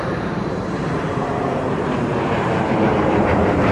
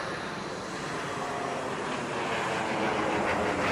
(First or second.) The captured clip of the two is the second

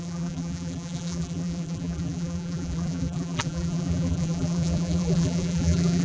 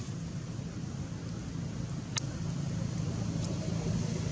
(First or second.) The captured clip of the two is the second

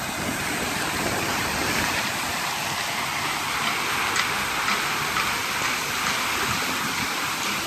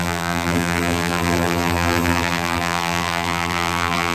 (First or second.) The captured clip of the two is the first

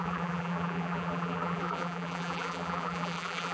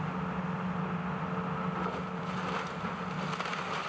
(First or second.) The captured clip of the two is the second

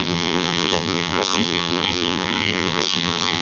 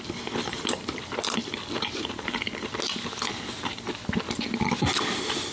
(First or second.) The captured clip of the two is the second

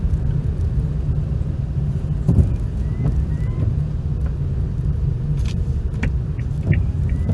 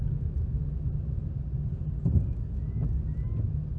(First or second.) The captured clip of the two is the second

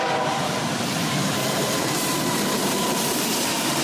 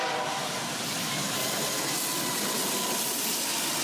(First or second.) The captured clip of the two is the second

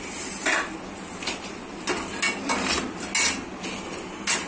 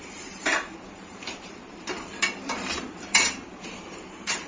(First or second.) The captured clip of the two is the first